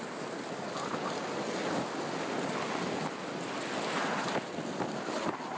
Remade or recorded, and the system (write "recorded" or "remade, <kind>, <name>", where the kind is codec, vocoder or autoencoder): recorded